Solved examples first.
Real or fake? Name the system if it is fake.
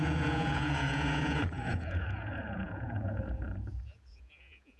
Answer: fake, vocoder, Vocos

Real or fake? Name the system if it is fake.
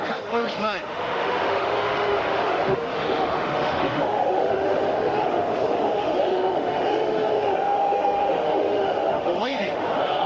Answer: fake, autoencoder, DAC-VAE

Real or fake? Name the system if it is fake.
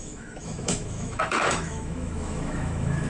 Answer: fake, autoencoder, DAC-VAE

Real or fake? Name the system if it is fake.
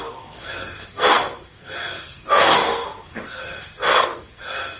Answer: fake, codec, SNAC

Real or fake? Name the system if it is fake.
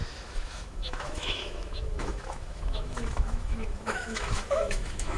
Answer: fake, autoencoder, DAC-VAE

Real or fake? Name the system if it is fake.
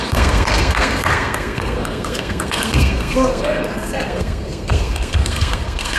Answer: fake, codec, SNAC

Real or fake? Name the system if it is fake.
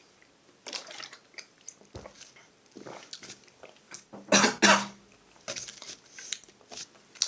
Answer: real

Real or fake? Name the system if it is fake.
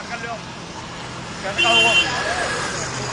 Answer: real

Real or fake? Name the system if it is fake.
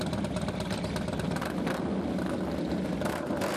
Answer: fake, vocoder, BigVGAN v2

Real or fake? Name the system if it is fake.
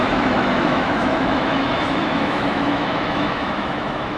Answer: fake, autoencoder, DAC-VAE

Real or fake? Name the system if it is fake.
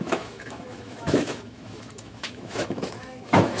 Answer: fake, autoencoder, DAC-VAE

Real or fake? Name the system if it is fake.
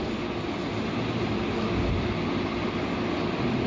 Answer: real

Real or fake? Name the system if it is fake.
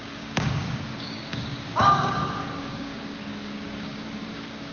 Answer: fake, codec, DAC